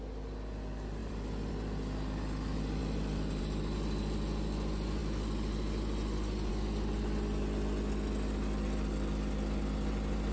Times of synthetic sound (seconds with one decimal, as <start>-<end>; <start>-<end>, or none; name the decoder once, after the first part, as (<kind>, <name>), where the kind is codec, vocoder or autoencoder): 1.0-1.5 (vocoder, BigVGAN v2)